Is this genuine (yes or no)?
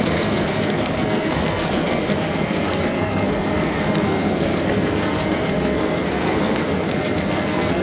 no